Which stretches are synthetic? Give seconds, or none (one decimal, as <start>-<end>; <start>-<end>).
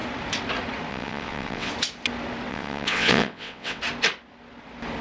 0.9-1.7; 2.5-3.8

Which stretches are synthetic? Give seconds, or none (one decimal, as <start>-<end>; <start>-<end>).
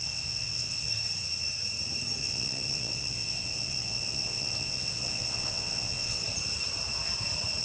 0.0-0.9; 2.2-6.2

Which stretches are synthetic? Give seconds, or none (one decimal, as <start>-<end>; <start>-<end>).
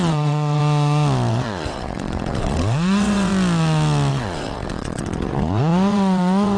0.0-0.6; 1.3-3.3; 4.1-6.6